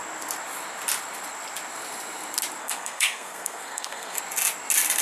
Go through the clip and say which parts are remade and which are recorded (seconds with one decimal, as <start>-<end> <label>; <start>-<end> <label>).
0.0-2.6 recorded; 2.6-4.2 remade; 4.2-5.0 recorded